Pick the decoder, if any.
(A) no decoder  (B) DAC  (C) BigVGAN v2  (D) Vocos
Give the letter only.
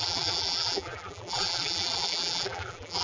C